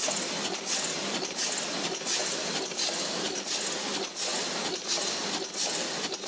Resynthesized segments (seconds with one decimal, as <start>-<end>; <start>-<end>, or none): 2.2-3.4; 4.3-4.9